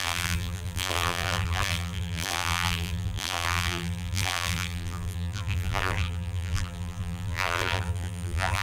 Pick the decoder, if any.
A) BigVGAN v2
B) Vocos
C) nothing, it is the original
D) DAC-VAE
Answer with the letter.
A